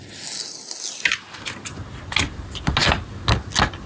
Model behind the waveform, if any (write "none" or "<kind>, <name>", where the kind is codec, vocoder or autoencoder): none